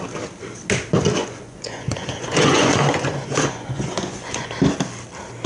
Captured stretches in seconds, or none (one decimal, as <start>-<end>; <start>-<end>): 0.0-1.2; 4.5-5.5